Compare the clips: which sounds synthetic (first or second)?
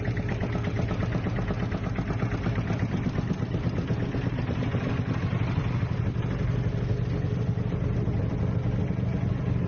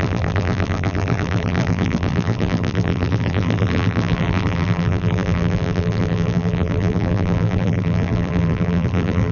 second